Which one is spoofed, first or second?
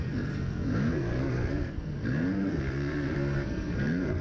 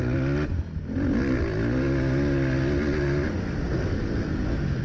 first